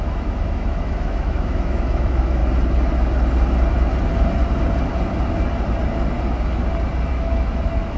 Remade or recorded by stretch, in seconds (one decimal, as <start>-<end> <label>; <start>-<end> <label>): 0.0-2.4 remade; 2.4-7.1 recorded; 7.1-8.0 remade